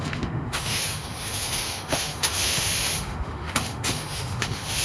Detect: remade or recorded remade